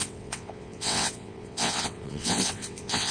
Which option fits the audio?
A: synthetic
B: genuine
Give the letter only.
A